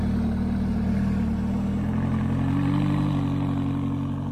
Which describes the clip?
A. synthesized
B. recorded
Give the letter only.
B